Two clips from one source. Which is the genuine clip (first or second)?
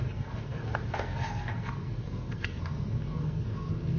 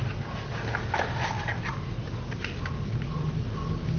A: second